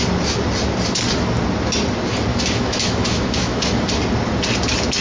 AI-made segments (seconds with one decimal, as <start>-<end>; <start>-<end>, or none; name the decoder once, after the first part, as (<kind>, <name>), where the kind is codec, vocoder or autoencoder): 2.3-3.8 (autoencoder, DAC-VAE)